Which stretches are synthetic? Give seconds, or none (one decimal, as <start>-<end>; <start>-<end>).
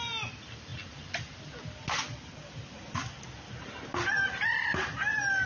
none